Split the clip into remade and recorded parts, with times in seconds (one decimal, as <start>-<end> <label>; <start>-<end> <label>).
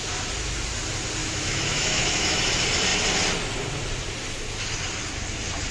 0.0-1.2 recorded; 1.2-2.4 remade; 2.4-5.7 recorded